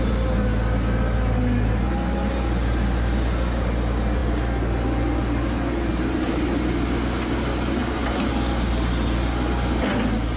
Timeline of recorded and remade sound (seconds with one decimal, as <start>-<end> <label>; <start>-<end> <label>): 0.0-10.4 recorded